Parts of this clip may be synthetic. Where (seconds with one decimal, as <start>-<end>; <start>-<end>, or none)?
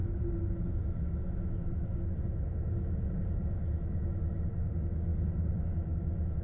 0.7-5.1; 5.6-6.4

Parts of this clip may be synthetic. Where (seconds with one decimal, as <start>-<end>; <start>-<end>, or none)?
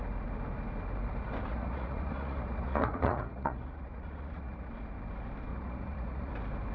1.5-4.7; 5.5-6.3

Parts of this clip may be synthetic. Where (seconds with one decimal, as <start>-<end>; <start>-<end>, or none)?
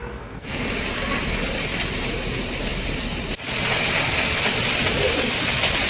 0.0-0.6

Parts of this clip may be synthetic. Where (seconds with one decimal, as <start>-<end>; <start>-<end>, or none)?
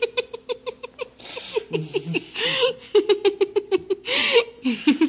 none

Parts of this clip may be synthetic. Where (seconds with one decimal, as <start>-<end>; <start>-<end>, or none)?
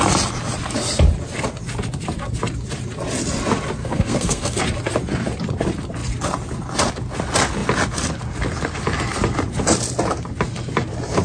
3.8-4.6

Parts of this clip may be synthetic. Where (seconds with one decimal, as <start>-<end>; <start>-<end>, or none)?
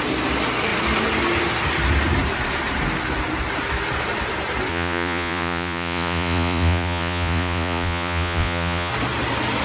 4.7-8.9